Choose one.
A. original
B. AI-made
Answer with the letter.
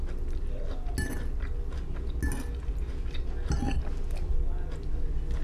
A